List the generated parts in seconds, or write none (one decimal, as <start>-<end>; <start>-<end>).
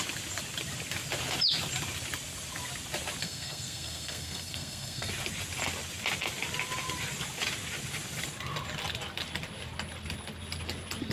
3.2-5.1